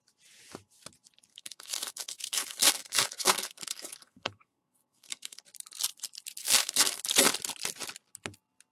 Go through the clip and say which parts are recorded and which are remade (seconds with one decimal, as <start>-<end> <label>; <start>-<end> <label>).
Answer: 0.0-1.3 recorded; 1.3-5.4 remade; 5.4-6.4 recorded; 6.4-7.0 remade; 7.0-8.7 recorded